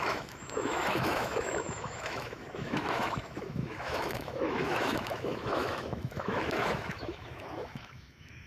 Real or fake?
fake